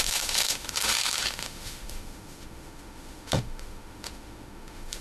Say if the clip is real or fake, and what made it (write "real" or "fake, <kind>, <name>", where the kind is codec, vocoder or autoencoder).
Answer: fake, autoencoder, DAC-VAE